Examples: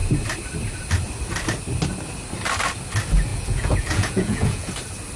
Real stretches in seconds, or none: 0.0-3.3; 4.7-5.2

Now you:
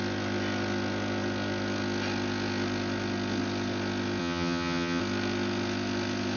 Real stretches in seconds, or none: 0.0-4.2; 5.0-6.4

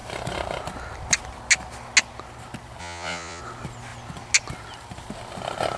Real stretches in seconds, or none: 0.0-2.8; 3.4-5.8

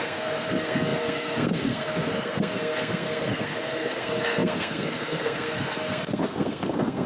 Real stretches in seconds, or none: none